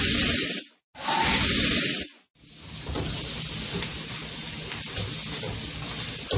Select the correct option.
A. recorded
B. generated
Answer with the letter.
A